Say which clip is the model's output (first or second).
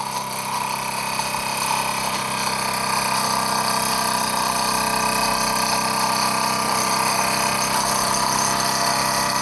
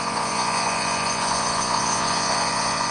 second